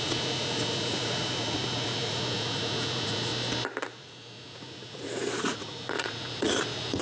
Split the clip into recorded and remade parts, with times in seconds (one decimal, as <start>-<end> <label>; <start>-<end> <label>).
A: 0.0-3.3 remade; 3.3-4.0 recorded; 4.0-7.0 remade